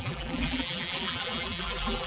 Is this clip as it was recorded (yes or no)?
no